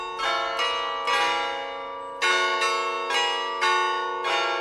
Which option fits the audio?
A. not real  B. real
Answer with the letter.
B